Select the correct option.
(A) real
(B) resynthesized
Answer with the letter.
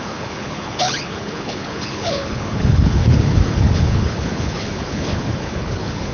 B